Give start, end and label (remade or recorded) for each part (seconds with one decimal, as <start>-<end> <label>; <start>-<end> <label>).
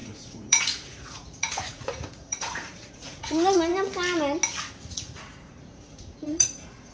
0.0-3.7 remade; 3.7-4.9 recorded; 4.9-6.9 remade